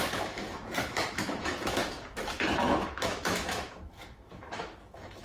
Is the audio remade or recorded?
remade